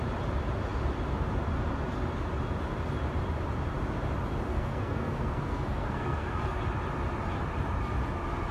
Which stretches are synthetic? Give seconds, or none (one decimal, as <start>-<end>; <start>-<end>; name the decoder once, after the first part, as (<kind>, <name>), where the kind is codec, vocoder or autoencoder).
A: 4.5-6.6 (codec, SNAC)